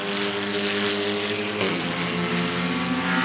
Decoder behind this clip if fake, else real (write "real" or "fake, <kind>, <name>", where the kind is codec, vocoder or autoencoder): real